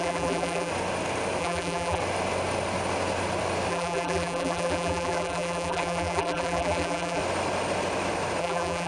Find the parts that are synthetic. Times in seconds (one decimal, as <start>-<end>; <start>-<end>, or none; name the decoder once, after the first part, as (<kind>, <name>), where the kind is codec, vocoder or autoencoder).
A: 0.0-0.7 (vocoder, BigVGAN v2); 1.4-2.0; 3.7-7.2; 8.4-8.9